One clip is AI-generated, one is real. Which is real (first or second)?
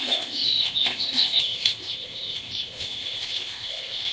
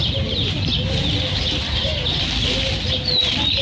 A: second